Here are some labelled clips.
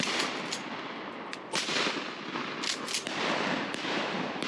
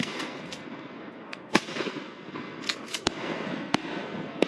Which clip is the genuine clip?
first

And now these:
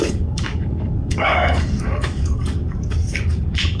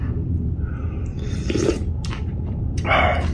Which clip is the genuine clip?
second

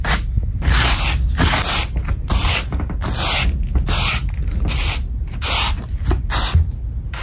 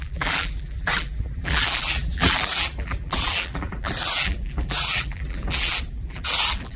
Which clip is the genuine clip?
first